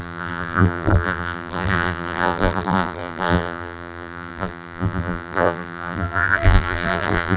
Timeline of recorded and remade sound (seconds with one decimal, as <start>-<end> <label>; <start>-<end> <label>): 0.0-7.4 remade